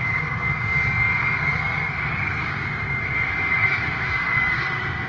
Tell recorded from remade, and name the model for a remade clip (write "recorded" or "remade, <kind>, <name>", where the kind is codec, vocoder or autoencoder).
remade, codec, DAC